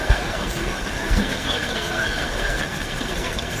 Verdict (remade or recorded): remade